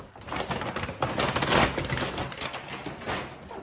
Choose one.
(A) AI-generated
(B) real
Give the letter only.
B